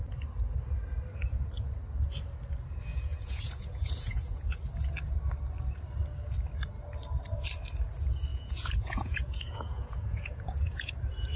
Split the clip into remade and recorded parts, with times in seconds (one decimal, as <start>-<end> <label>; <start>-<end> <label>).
0.0-2.9 recorded; 2.9-4.6 remade; 4.6-8.3 recorded; 8.3-10.9 remade; 10.9-11.4 recorded

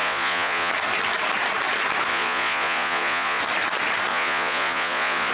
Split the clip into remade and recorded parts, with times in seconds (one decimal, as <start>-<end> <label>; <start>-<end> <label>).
0.0-0.7 remade; 0.7-2.1 recorded; 2.1-3.4 remade; 3.4-4.1 recorded; 4.1-5.3 remade